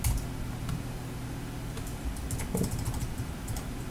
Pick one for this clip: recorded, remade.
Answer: recorded